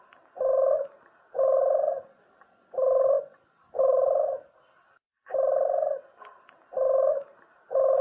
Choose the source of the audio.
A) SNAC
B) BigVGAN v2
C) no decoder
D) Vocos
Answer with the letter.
C